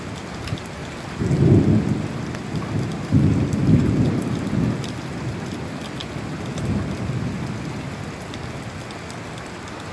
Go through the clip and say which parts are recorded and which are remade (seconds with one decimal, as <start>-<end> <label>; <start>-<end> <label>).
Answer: 0.0-0.8 recorded; 0.8-1.5 remade; 1.5-9.9 recorded